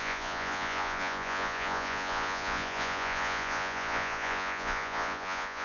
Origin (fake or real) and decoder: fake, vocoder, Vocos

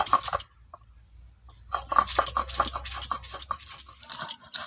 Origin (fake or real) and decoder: real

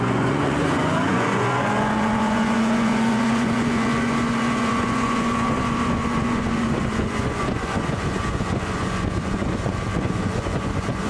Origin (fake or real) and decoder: fake, vocoder, Vocos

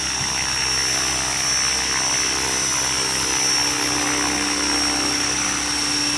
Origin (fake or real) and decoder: real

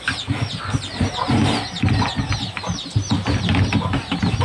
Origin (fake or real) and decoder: real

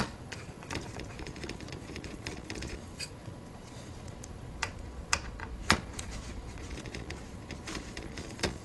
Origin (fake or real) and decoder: fake, vocoder, Vocos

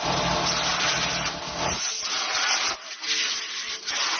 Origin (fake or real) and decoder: real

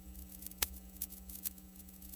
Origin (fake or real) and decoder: fake, vocoder, Vocos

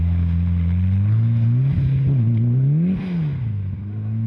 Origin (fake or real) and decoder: real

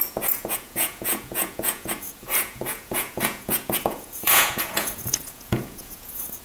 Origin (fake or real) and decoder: fake, vocoder, Vocos